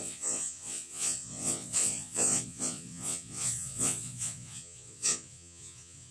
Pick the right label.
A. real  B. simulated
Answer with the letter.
B